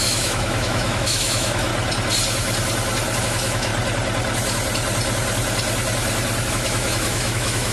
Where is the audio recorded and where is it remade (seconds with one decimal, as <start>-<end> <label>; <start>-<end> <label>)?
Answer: 0.0-1.7 remade; 1.7-3.2 recorded; 3.2-3.7 remade; 3.7-6.5 recorded; 6.5-7.7 remade